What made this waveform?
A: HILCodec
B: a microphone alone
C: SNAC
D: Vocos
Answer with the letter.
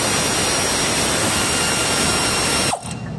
B